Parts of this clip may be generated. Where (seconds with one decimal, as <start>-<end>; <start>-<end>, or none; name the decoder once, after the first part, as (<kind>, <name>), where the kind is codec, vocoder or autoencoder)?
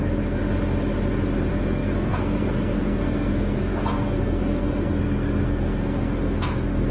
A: 0.0-0.4 (codec, SNAC); 1.5-6.9